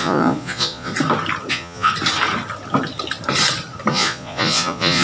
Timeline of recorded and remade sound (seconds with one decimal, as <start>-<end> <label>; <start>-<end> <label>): 0.0-0.9 remade; 0.9-1.5 recorded; 1.5-1.9 remade; 1.9-3.9 recorded; 3.9-5.0 remade